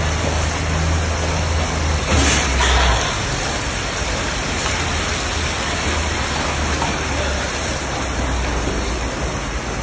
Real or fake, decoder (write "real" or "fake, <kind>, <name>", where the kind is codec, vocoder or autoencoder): real